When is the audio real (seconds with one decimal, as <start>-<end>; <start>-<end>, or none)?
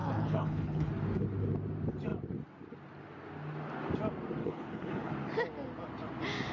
0.9-4.4; 5.1-6.5